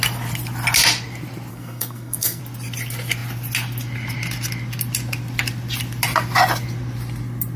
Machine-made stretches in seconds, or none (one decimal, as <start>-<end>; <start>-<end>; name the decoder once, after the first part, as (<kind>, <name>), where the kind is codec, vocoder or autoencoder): 1.5-2.4 (codec, SNAC)

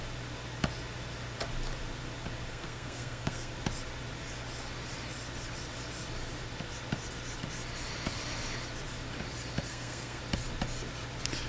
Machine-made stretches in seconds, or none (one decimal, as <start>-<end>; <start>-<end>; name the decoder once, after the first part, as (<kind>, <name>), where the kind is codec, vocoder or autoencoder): 2.5-3.5 (codec, SNAC); 9.7-10.2